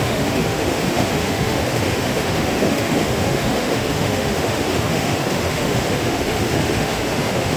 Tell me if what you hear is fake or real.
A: fake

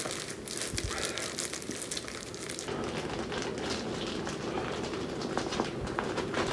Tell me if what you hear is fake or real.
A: real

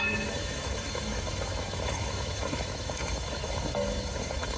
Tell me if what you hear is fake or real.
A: fake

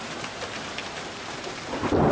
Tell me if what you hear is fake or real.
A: real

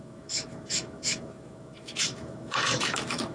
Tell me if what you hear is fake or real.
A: fake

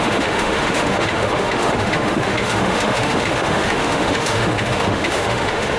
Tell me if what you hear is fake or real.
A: fake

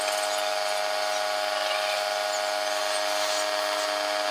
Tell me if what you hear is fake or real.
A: real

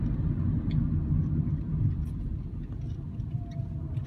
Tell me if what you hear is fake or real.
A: real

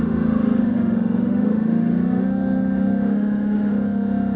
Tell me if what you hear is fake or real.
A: fake